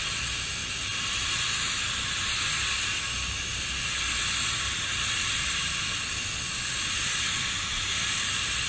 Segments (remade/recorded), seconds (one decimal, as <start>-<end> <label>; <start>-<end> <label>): 0.0-8.7 recorded